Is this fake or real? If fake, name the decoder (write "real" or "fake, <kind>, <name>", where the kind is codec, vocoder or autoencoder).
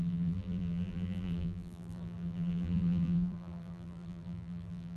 fake, vocoder, BigVGAN v2